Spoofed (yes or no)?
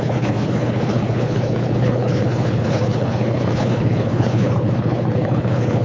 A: yes